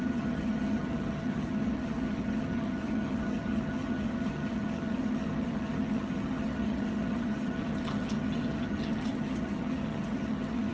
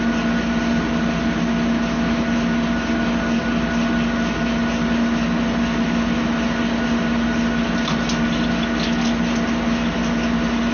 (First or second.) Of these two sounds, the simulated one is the first